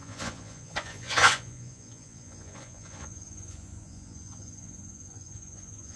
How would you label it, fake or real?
fake